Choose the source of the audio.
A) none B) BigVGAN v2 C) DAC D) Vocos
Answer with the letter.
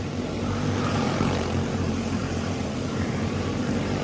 B